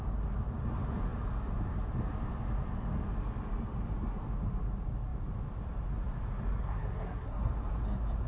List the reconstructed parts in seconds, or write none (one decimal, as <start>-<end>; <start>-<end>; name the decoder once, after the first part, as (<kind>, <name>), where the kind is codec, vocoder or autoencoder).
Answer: 6.6-7.5 (codec, SNAC)

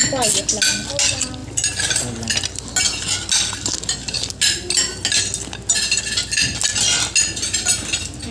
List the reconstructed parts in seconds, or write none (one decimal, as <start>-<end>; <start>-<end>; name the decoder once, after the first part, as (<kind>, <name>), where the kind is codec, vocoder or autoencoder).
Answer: none

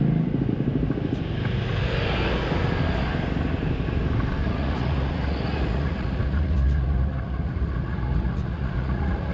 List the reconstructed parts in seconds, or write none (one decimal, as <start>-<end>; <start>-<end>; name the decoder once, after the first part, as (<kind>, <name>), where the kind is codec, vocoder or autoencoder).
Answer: 4.4-9.3 (vocoder, Vocos)

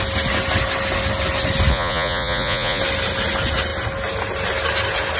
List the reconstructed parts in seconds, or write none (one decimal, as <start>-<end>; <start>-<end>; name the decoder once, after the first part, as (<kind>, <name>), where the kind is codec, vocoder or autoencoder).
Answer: 1.7-2.8 (vocoder, Vocos)

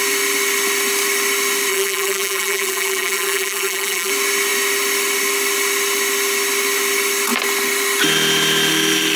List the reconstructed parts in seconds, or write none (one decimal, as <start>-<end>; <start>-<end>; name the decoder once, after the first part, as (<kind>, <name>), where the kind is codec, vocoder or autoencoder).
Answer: 1.7-4.1 (vocoder, BigVGAN v2)